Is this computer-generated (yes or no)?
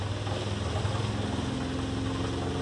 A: no